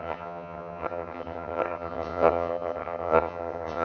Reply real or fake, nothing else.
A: fake